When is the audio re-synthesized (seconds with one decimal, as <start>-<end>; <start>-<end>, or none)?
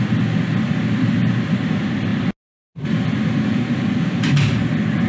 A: none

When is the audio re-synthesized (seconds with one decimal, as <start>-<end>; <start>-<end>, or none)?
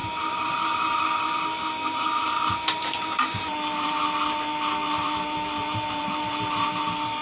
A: 0.0-4.0; 4.9-6.8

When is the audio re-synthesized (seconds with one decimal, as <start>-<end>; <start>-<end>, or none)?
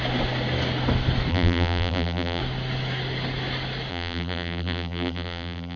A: 1.3-2.4; 3.9-5.8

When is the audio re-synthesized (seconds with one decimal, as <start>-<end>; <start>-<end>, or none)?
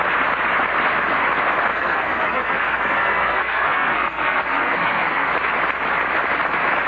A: 1.7-5.3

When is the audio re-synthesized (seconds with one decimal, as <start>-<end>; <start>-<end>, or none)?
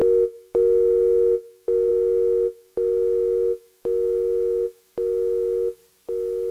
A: 0.0-5.8